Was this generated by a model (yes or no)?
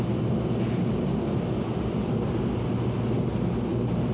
no